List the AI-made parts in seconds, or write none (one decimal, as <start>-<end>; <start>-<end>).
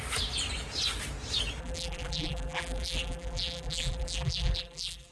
1.6-5.1